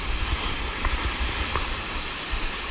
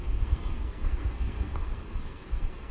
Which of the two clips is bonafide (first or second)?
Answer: first